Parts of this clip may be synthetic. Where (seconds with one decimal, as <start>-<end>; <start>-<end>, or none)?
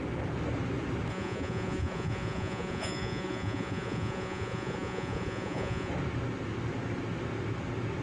1.1-5.9